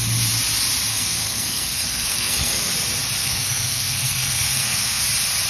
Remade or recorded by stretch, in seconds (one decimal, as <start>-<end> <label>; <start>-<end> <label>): 0.0-0.9 recorded; 0.9-2.7 remade; 2.7-3.2 recorded; 3.2-5.0 remade; 5.0-5.5 recorded